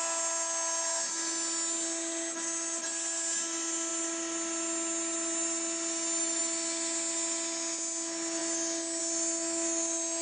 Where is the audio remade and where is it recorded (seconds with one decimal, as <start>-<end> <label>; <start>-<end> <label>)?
0.0-10.2 recorded